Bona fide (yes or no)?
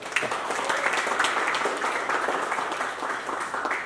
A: yes